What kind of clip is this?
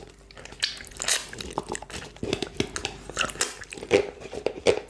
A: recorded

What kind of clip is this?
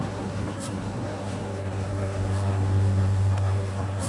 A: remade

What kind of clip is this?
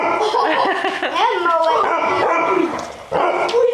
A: recorded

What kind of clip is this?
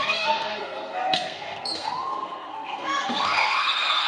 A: remade